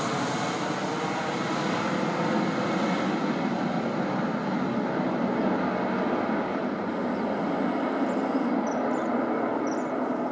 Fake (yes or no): no